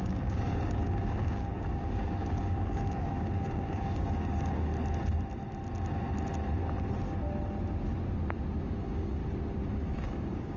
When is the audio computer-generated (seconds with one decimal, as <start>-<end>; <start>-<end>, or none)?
0.0-4.7; 8.6-9.2; 9.7-10.6

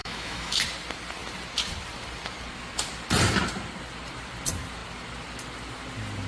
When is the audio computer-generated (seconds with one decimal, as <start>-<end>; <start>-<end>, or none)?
0.0-0.6

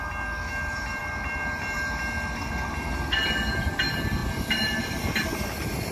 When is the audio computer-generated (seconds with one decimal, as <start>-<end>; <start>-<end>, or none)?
none